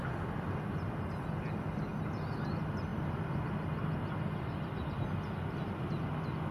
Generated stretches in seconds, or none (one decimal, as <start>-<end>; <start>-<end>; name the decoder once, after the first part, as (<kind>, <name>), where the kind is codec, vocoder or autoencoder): 2.9-3.4 (vocoder, BigVGAN v2)